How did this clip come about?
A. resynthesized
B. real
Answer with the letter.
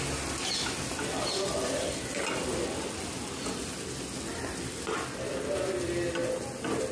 B